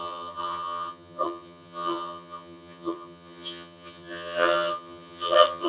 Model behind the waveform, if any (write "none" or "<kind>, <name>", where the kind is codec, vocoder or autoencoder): vocoder, HiFi-GAN